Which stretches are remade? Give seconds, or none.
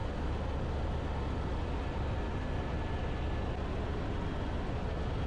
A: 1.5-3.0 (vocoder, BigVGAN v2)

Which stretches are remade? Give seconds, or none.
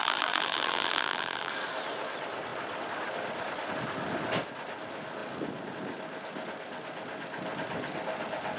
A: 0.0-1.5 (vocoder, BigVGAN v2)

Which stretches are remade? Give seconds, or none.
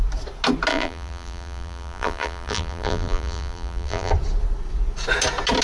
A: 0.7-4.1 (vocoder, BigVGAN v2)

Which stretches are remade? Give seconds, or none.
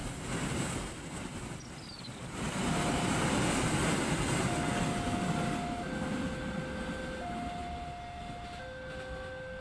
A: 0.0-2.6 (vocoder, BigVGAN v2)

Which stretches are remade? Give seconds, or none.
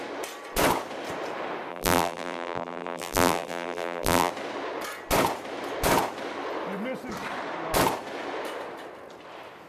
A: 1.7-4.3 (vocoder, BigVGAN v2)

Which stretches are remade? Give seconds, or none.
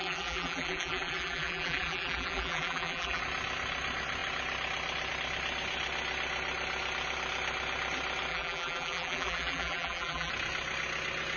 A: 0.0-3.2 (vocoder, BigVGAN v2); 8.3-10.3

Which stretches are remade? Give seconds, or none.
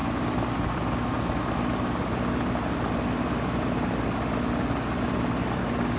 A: none